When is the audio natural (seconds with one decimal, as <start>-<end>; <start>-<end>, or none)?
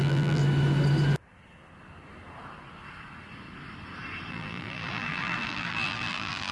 0.4-4.3